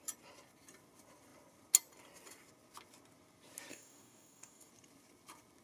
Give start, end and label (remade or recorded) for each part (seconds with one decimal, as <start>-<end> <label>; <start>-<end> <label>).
0.0-3.7 recorded; 3.7-4.7 remade; 4.7-5.6 recorded